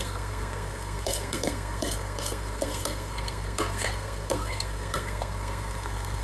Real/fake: fake